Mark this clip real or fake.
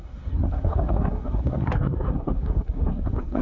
fake